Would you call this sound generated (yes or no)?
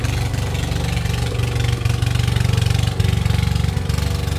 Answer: no